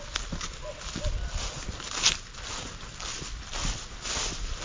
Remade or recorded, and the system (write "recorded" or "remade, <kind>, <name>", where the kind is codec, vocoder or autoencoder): recorded